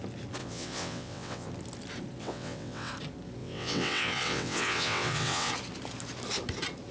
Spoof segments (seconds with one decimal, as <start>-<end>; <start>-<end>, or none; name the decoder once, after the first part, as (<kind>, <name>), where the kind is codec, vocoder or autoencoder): 0.4-1.5 (vocoder, WaveNeXt); 2.2-2.9; 3.4-5.5